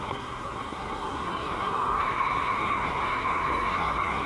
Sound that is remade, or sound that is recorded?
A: remade